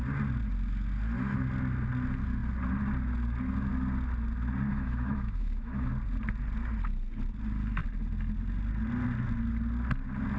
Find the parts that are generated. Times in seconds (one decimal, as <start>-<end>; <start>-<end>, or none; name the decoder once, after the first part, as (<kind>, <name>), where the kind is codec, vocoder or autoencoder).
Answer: 4.7-5.9 (autoencoder, DAC-VAE)